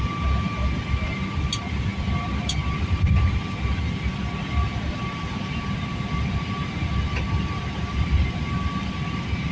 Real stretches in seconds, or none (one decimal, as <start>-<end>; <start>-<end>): 0.0-9.5